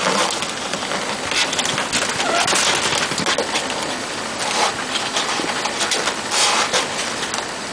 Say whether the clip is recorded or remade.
recorded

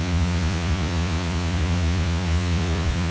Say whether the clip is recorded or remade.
remade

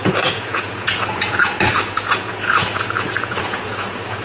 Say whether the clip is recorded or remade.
remade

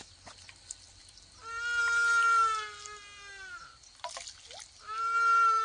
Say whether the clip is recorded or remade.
recorded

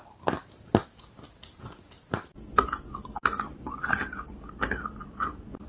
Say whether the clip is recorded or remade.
recorded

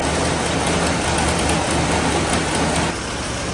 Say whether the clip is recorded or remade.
recorded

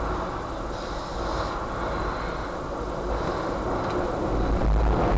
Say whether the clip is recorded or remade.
recorded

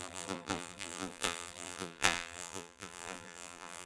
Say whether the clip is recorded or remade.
remade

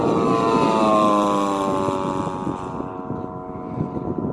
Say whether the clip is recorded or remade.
recorded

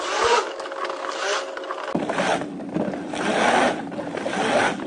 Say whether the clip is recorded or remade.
recorded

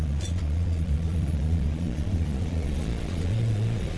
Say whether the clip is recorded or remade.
remade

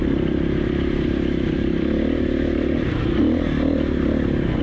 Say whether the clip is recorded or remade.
recorded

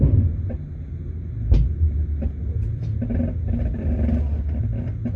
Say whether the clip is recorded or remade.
recorded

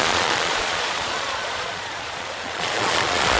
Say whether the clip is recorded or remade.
remade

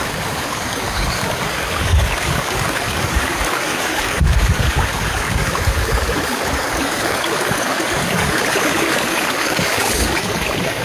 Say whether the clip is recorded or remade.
remade